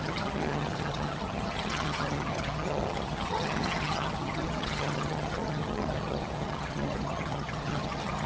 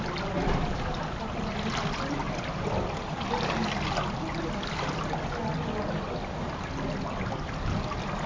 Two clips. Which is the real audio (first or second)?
second